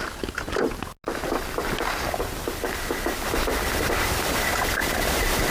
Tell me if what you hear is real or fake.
real